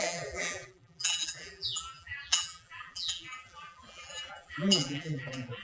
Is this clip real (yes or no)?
no